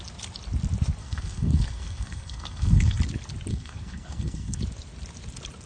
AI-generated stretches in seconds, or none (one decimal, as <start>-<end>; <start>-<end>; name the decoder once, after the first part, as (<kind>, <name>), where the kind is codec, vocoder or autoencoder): 1.0-3.0 (codec, SNAC); 3.5-4.6